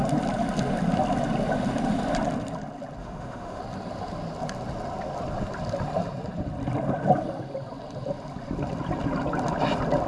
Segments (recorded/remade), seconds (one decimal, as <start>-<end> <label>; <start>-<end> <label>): 0.0-3.0 recorded; 3.0-3.6 remade; 3.6-10.1 recorded